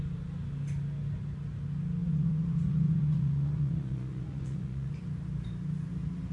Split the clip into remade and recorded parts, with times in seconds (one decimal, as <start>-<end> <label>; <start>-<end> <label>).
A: 0.0-2.0 recorded; 2.0-4.9 remade; 4.9-6.3 recorded